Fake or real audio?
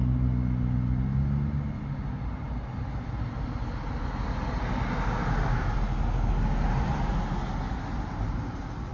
real